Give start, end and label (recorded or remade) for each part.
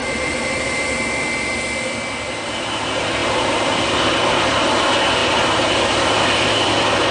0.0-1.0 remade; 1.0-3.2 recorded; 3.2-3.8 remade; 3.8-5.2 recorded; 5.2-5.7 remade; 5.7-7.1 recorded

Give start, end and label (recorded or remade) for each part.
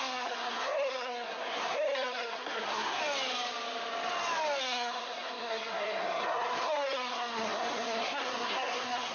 0.0-3.0 remade; 3.0-4.6 recorded; 4.6-9.1 remade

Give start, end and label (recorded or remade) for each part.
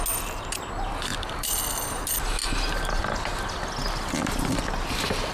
0.0-1.1 recorded; 1.1-1.9 remade; 1.9-5.3 recorded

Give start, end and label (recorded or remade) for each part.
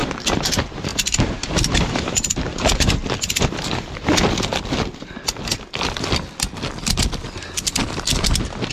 0.0-3.0 remade; 3.0-7.9 recorded; 7.9-8.7 remade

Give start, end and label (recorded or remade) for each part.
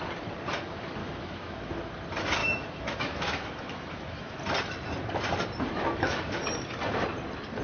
0.0-1.0 recorded; 1.0-1.7 remade; 1.7-2.4 recorded; 2.4-4.4 remade; 4.4-5.7 recorded; 5.7-6.4 remade; 6.4-7.6 recorded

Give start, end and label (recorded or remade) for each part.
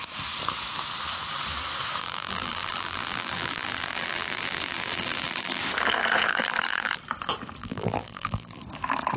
0.0-2.0 recorded; 2.0-5.6 remade; 5.6-6.3 recorded; 6.3-7.0 remade; 7.0-7.6 recorded; 7.6-8.6 remade; 8.6-9.2 recorded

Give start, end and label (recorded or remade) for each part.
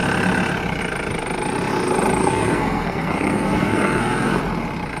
0.0-2.2 recorded; 2.2-4.4 remade; 4.4-5.0 recorded